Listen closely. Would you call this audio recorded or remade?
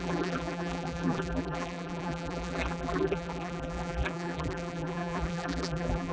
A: remade